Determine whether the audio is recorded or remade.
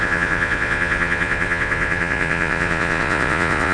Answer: remade